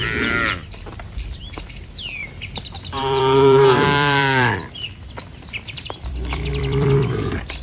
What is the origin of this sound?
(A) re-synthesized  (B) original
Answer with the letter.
A